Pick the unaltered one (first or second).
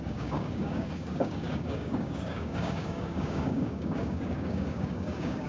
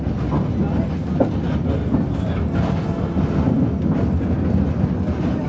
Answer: second